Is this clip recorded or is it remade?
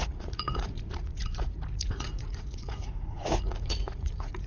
remade